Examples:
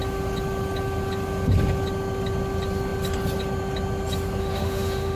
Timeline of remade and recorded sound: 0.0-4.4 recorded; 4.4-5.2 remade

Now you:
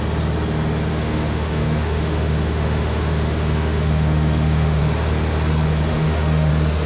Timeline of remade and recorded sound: 0.0-0.9 recorded; 0.9-4.8 remade; 4.8-5.9 recorded; 5.9-6.5 remade; 6.5-6.9 recorded

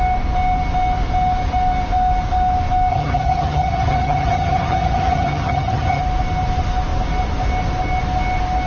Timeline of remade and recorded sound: 0.0-2.9 recorded; 2.9-6.0 remade; 6.0-8.7 recorded

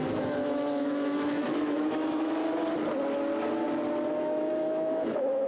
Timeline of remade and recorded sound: 0.0-2.4 remade; 2.4-4.2 recorded; 4.2-5.5 remade

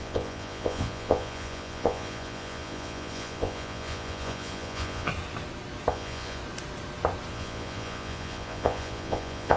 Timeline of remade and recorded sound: 0.0-5.1 remade; 5.1-5.9 recorded; 5.9-6.4 remade; 6.4-7.3 recorded; 7.3-9.6 remade

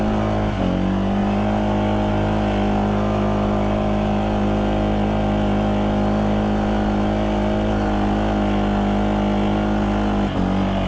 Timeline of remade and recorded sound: 0.0-1.2 recorded; 1.2-2.1 remade; 2.1-10.9 recorded